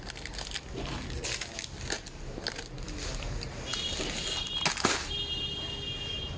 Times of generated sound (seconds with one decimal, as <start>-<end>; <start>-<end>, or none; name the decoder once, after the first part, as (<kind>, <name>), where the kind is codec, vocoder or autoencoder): none